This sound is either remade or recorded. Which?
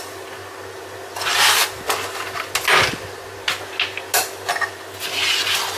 recorded